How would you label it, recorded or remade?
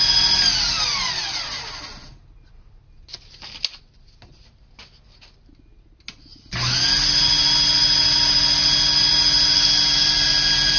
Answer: recorded